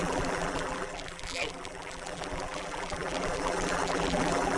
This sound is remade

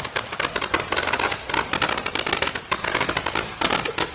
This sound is recorded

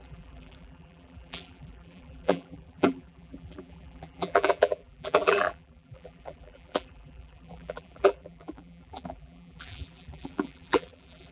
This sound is remade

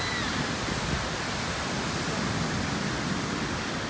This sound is recorded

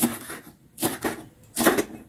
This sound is recorded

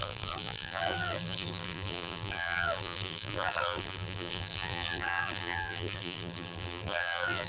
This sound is remade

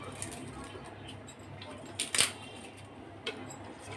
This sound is recorded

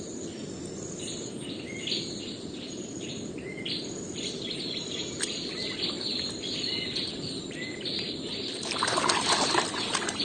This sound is remade